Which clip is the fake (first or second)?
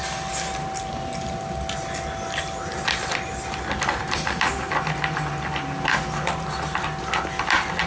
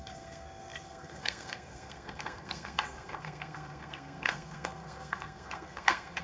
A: second